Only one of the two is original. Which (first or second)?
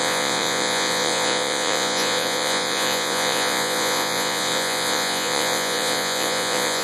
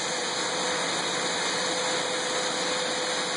second